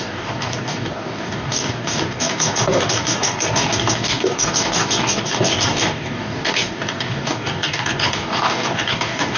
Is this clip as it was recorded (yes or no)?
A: no